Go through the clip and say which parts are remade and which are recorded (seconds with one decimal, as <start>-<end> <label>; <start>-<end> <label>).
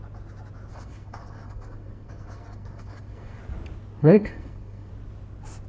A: 0.0-0.7 recorded; 0.7-3.4 remade; 3.4-4.0 recorded; 4.0-4.9 remade; 4.9-5.7 recorded